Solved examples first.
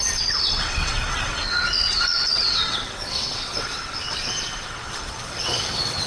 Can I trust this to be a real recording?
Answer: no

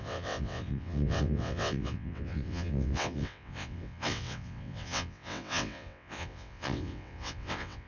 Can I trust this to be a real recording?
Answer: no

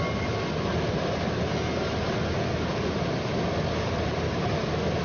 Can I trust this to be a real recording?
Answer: yes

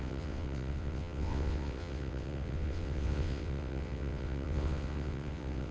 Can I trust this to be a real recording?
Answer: no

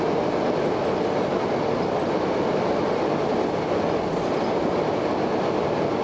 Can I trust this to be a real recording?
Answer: yes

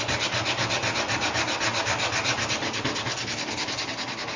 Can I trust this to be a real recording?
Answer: yes